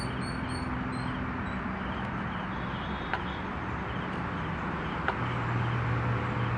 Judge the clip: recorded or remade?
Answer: recorded